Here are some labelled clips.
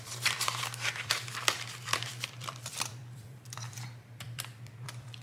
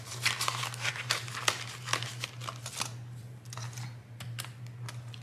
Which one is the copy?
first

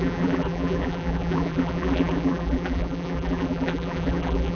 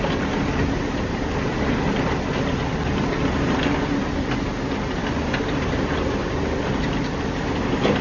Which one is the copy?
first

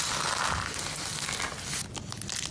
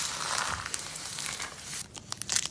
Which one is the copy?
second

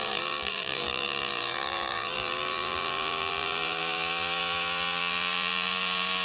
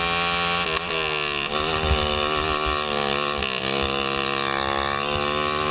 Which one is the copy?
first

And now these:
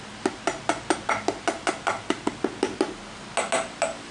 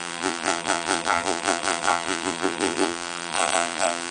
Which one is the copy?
second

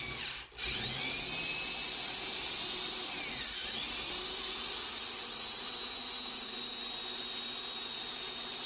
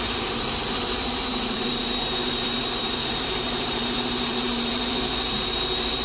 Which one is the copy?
second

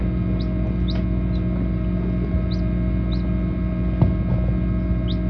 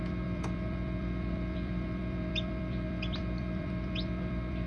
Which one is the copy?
second